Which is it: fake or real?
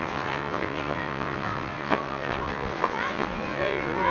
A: fake